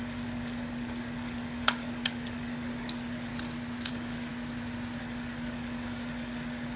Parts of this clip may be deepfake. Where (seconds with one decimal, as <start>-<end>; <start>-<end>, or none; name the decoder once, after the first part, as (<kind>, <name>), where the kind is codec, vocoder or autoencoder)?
0.0-3.3 (codec, DAC); 3.9-4.3; 5.0-6.8